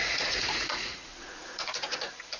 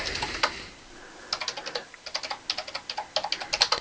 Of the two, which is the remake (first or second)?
first